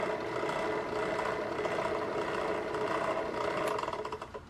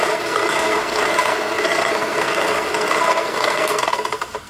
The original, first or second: first